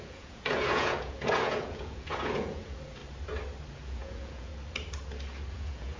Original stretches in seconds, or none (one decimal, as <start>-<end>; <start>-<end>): 3.0-3.7; 4.5-5.5